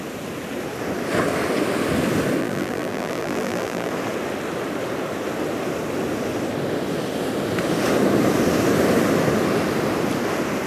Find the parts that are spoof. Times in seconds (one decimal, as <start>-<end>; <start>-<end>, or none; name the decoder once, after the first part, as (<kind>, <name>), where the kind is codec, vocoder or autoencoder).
2.4-3.9 (vocoder, BigVGAN v2)